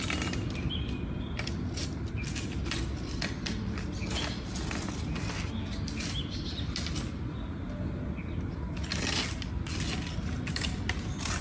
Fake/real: real